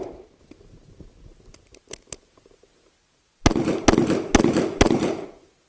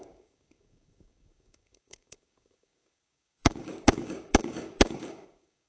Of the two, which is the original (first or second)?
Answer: first